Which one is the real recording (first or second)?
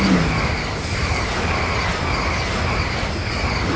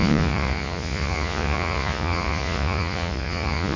first